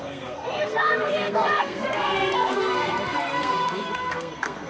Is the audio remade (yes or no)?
yes